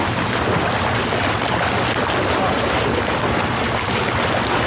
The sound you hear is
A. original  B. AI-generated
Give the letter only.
A